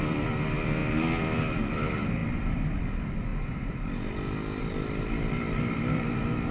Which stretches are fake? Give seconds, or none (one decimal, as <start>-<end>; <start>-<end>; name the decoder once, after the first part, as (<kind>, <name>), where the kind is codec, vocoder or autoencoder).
0.0-0.8 (vocoder, BigVGAN v2); 1.5-3.3; 4.6-6.5